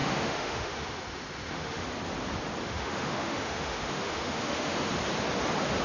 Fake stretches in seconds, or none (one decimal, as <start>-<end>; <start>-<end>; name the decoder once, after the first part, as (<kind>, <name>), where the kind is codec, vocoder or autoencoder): 0.0-1.8 (autoencoder, DAC-VAE); 2.6-4.9